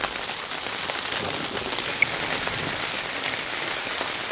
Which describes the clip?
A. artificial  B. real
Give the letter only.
B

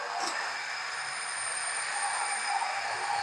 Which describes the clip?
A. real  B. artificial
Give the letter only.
B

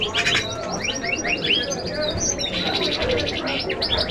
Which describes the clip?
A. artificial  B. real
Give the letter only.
B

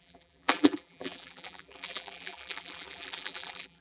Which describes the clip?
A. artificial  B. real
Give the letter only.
A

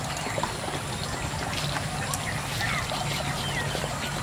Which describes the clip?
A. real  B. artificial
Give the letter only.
A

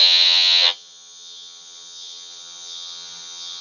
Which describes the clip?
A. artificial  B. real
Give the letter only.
A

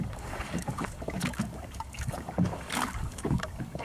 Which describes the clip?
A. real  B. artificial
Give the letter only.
B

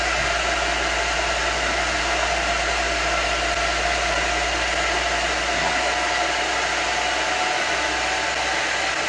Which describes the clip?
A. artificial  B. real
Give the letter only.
B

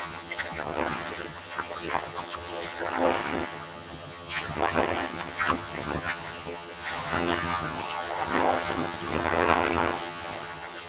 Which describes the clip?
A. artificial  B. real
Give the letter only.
A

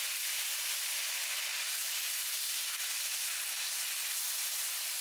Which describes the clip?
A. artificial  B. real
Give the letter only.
B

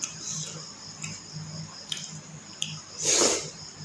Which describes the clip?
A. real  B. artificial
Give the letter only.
A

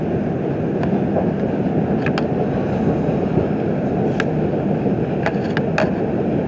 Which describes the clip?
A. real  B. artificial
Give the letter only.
A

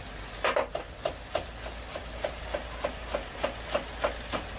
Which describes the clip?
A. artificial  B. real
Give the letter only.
B